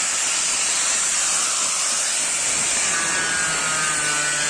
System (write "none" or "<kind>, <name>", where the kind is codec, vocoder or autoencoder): none